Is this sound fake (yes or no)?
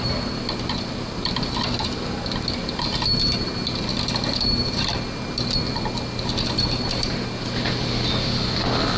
no